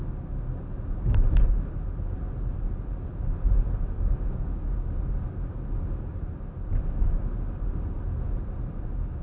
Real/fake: real